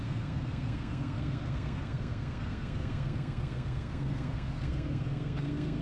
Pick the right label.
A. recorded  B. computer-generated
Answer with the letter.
B